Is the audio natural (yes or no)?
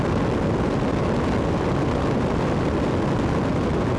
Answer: yes